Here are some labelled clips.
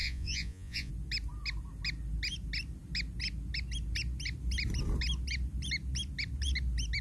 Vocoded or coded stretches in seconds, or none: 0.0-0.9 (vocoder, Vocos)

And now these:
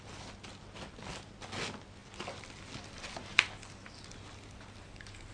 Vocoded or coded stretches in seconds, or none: none

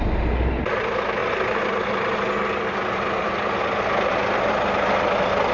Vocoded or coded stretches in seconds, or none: none

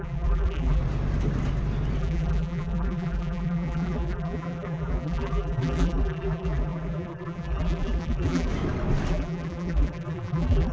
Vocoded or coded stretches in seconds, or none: 0.0-0.8 (vocoder, BigVGAN v2); 2.0-8.5; 9.1-10.7

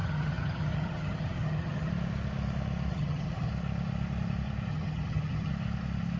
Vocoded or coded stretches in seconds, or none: 0.0-1.9 (vocoder, HiFi-GAN); 2.9-3.5; 4.7-5.5

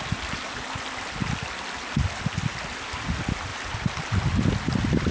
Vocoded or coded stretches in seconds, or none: none